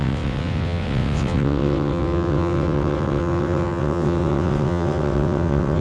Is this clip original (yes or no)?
no